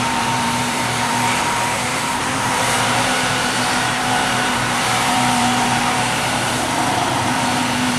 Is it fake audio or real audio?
fake